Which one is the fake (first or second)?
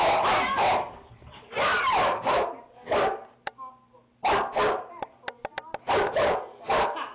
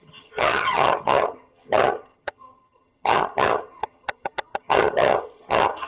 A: second